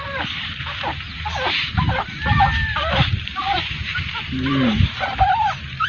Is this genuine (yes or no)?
no